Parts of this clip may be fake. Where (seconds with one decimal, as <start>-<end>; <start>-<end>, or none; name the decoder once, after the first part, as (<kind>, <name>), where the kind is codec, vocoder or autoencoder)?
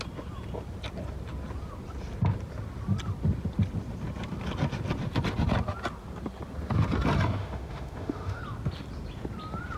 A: 7.4-8.4 (autoencoder, DAC-VAE)